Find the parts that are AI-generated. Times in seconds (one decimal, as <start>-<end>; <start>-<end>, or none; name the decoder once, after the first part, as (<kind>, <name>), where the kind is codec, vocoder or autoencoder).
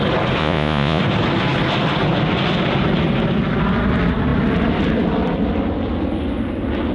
0.4-1.0 (vocoder, Vocos)